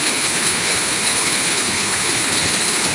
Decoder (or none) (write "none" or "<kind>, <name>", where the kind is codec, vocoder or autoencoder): codec, HILCodec